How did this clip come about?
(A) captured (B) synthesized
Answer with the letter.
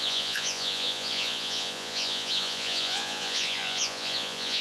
B